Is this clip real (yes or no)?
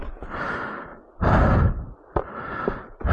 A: no